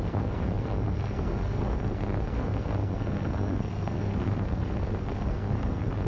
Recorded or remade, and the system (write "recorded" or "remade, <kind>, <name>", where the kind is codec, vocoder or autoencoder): remade, codec, SNAC